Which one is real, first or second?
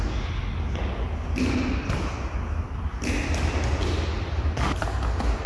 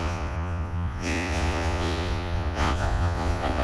first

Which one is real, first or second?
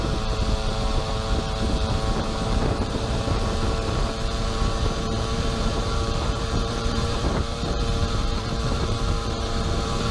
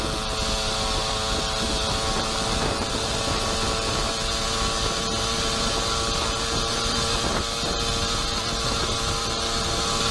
second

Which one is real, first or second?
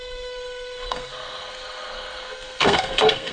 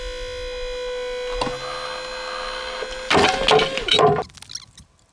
second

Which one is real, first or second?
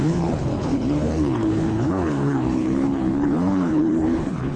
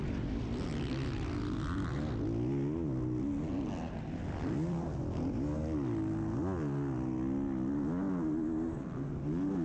second